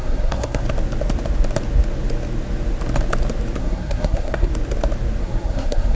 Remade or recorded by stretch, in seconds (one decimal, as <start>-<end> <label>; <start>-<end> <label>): 0.0-0.6 remade; 0.6-3.6 recorded; 3.6-4.5 remade; 4.5-5.2 recorded; 5.2-6.0 remade